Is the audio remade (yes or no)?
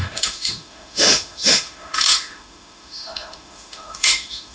yes